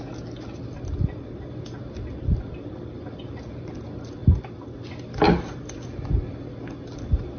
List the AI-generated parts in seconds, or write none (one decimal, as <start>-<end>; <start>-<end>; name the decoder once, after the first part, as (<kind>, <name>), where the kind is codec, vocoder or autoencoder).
none